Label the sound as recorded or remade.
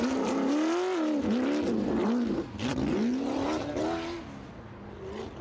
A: recorded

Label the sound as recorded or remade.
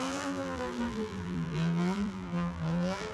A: remade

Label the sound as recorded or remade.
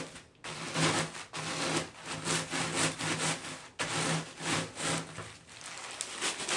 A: recorded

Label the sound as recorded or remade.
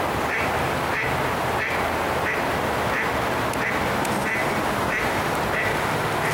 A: recorded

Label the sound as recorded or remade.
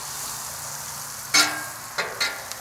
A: recorded